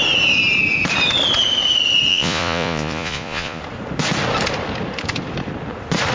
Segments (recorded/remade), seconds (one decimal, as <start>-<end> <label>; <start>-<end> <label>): 0.0-2.1 recorded; 2.1-3.6 remade; 3.6-6.1 recorded